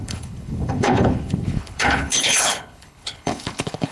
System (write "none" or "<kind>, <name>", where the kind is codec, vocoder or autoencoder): codec, HILCodec